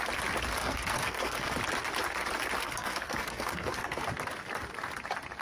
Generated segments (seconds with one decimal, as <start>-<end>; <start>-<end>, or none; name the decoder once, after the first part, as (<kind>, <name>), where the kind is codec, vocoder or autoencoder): 0.6-1.6 (codec, SNAC); 2.6-4.1